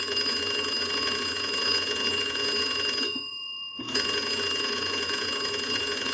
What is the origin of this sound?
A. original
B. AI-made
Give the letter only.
B